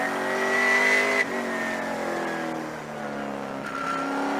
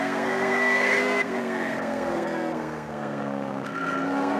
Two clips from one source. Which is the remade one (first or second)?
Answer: second